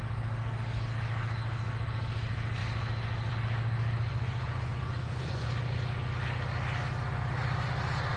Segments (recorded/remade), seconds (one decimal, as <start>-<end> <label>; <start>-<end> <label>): 0.0-4.1 recorded; 4.1-5.5 remade; 5.5-8.2 recorded

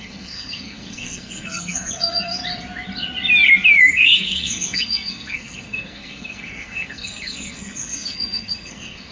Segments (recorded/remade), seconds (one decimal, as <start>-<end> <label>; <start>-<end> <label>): 0.0-2.4 remade; 2.4-3.8 recorded; 3.8-9.1 remade

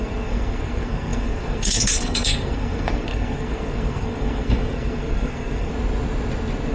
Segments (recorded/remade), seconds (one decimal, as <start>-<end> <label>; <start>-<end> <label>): 0.0-5.7 remade; 5.7-6.7 recorded

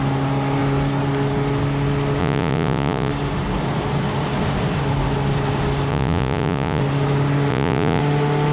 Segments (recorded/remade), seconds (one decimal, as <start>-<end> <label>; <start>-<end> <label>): 0.0-2.2 recorded; 2.2-3.1 remade; 3.1-5.9 recorded; 5.9-6.8 remade; 6.8-7.5 recorded; 7.5-8.0 remade; 8.0-8.5 recorded